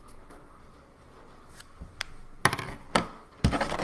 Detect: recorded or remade recorded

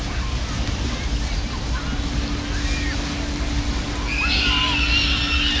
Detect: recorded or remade recorded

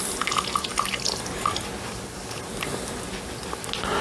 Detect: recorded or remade recorded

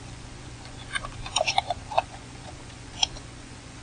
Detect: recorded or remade remade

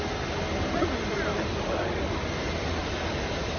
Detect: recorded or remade recorded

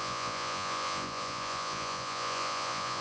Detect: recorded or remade remade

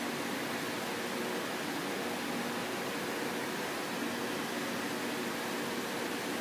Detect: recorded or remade recorded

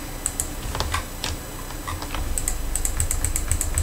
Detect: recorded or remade recorded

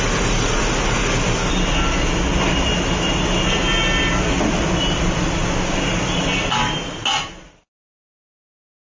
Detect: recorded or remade recorded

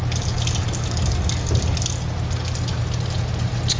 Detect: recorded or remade recorded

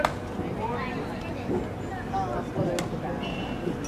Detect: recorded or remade recorded